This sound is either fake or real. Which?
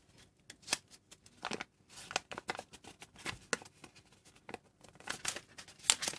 real